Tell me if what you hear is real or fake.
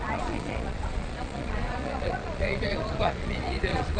fake